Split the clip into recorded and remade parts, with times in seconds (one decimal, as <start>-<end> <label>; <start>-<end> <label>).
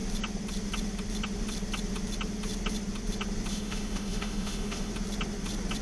0.0-3.5 recorded; 3.5-4.9 remade; 4.9-5.8 recorded